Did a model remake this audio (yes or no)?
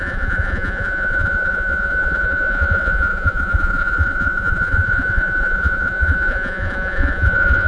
yes